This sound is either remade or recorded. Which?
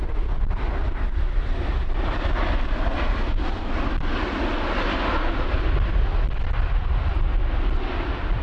recorded